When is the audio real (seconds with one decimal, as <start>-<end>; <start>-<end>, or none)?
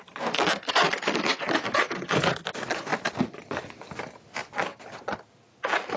0.0-1.6; 2.4-6.0